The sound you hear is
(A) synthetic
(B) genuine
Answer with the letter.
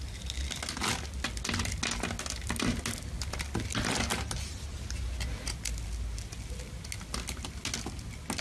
B